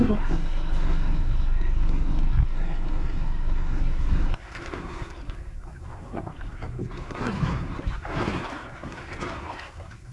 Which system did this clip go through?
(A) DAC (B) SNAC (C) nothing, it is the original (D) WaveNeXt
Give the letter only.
B